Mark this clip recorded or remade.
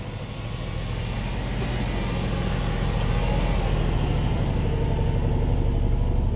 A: recorded